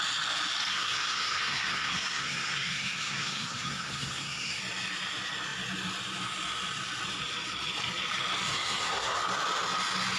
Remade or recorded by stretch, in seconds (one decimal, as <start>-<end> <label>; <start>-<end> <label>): 0.0-0.7 recorded; 0.7-4.6 remade; 4.6-8.5 recorded; 8.5-9.2 remade; 9.2-10.2 recorded